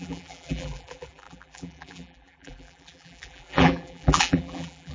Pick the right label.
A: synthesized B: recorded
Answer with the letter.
A